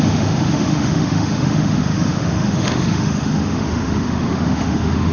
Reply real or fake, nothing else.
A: fake